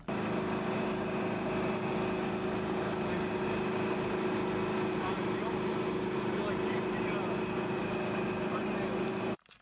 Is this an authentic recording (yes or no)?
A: yes